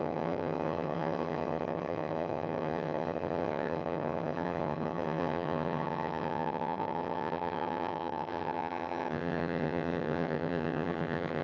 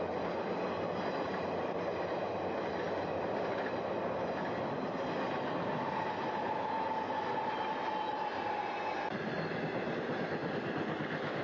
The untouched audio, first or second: second